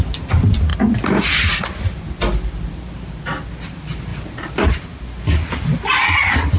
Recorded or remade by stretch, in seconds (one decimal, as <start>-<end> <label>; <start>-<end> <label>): 0.0-0.7 recorded; 0.7-2.0 remade; 2.0-6.6 recorded